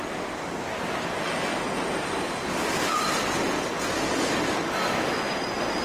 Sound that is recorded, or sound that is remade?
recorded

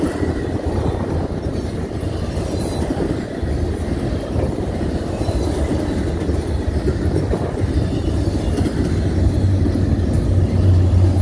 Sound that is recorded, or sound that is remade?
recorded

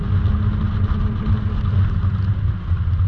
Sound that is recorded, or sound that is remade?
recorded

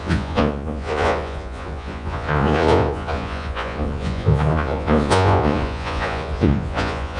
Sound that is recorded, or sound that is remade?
remade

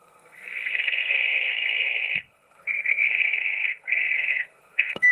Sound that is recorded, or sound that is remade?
remade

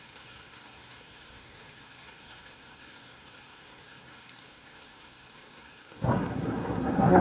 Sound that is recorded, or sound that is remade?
remade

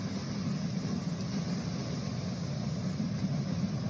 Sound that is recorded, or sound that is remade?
recorded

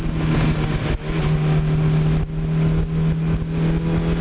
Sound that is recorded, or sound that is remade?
recorded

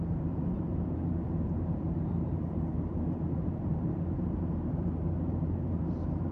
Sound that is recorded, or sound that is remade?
remade